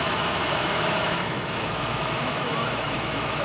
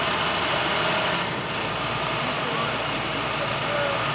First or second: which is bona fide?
second